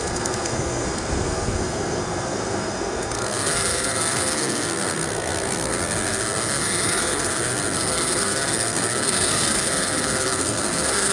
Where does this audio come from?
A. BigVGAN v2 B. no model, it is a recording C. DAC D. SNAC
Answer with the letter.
D